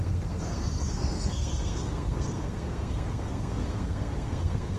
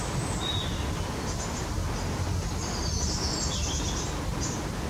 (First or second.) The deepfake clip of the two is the first